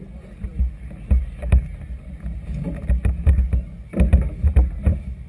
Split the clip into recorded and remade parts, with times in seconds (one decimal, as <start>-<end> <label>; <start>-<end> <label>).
0.0-5.3 recorded